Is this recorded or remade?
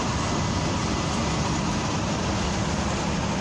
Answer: recorded